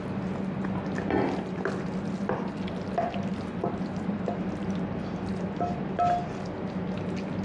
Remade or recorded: recorded